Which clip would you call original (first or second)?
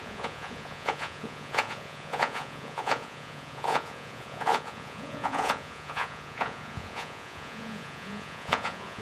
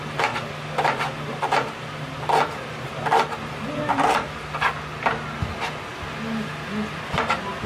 second